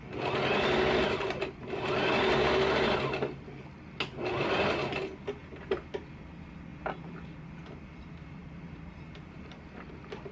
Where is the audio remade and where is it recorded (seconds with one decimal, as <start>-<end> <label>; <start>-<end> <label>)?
0.0-8.4 recorded; 8.4-10.3 remade